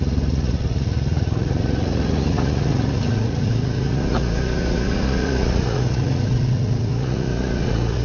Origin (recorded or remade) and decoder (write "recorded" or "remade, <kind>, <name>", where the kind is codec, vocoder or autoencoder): remade, vocoder, Vocos